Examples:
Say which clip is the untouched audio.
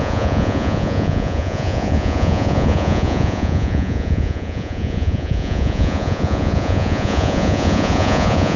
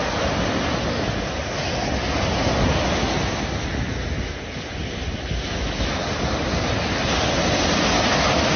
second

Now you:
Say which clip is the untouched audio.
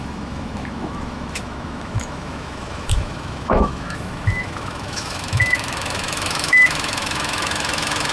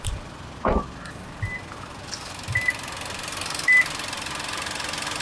second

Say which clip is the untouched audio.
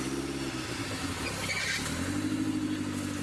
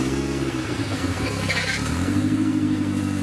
first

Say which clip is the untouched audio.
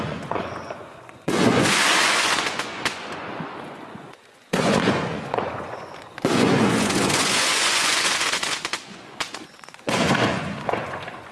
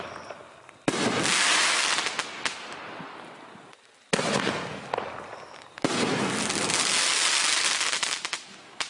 second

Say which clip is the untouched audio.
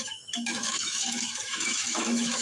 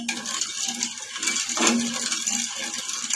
second